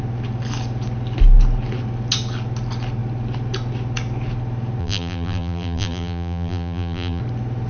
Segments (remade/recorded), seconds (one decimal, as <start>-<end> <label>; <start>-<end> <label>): 0.0-4.8 recorded; 4.8-7.2 remade; 7.2-7.7 recorded